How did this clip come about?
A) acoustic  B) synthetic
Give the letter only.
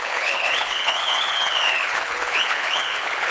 B